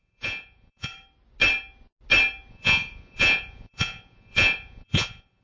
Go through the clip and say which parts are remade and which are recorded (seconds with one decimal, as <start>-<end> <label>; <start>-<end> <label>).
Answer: 0.0-0.9 remade; 0.9-2.5 recorded; 2.5-5.4 remade